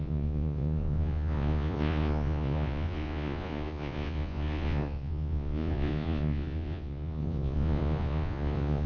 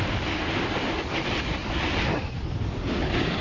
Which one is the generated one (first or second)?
first